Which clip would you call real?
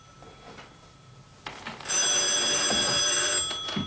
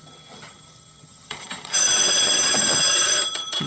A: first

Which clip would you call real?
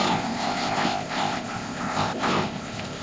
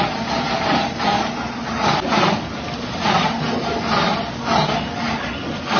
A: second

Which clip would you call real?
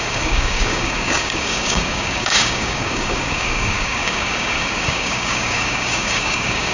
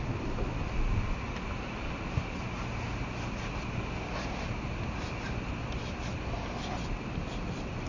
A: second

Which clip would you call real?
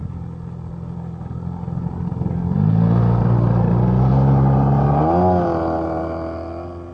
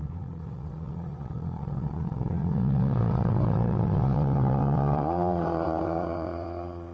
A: first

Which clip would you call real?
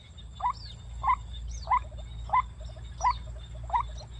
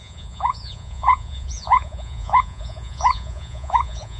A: first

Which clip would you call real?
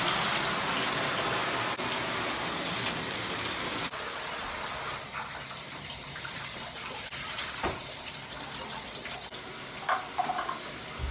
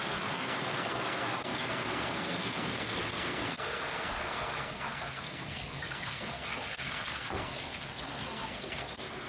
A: first